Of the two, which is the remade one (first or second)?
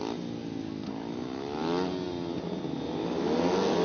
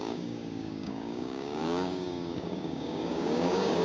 second